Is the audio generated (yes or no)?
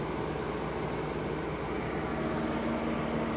no